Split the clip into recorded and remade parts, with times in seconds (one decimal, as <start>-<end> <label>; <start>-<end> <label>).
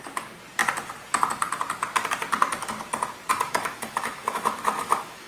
0.0-3.3 recorded; 3.3-5.3 remade